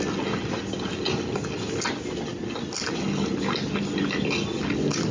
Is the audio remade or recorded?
recorded